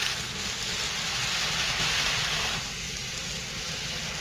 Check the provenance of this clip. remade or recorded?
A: recorded